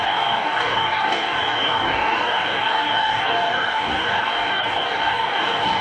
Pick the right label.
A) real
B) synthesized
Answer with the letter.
B